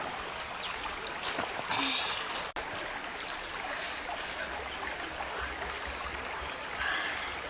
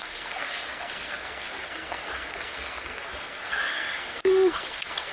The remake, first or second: second